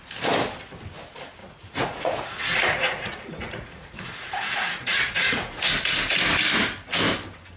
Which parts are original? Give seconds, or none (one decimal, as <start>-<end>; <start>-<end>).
0.0-1.4; 5.7-7.6

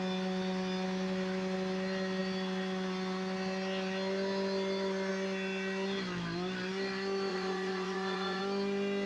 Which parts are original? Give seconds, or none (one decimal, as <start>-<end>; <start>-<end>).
0.0-7.3; 8.4-9.1